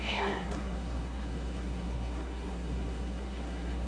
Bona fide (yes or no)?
no